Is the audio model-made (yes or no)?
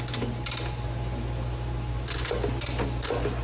no